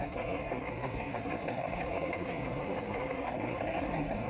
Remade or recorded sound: remade